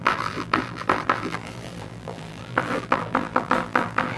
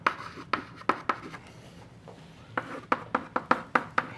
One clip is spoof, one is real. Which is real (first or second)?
second